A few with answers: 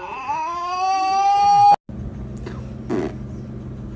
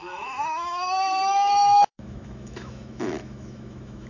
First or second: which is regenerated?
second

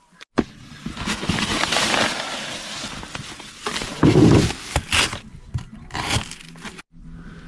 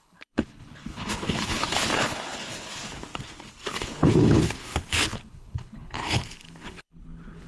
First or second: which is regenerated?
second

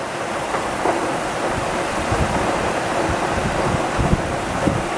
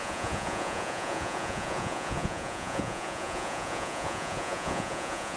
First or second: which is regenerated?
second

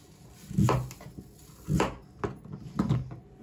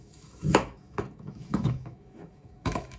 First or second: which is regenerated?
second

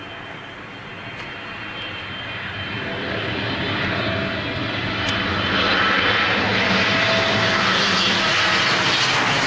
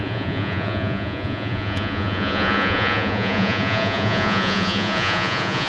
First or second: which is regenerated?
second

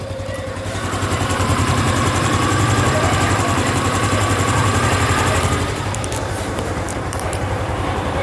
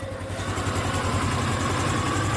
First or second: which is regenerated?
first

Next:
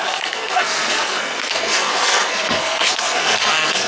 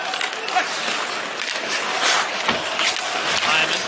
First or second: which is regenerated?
first